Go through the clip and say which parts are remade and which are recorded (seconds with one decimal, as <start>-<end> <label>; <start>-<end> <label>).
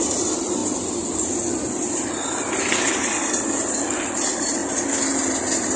0.0-0.6 remade; 0.6-4.0 recorded; 4.0-4.6 remade; 4.6-5.8 recorded